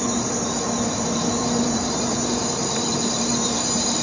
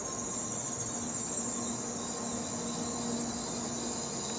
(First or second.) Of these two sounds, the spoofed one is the first